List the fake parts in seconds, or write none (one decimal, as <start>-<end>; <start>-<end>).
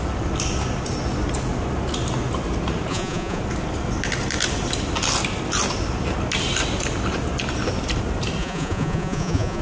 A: 2.9-3.4; 8.4-9.6